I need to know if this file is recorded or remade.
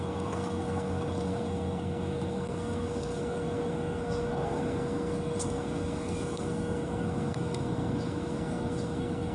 remade